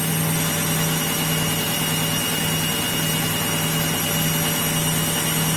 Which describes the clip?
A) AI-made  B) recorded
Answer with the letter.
B